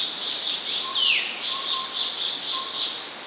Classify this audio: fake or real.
real